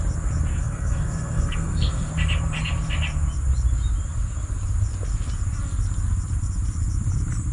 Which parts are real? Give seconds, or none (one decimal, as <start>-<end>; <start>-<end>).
0.0-0.5; 2.1-7.5